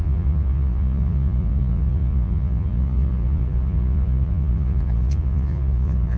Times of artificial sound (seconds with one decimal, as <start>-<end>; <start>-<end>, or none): 0.0-6.2